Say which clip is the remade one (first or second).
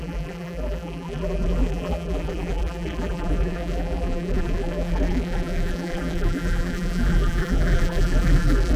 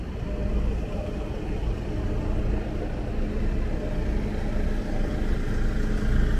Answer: first